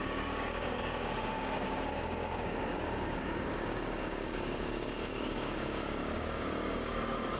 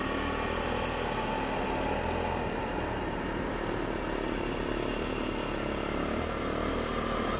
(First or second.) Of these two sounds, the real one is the second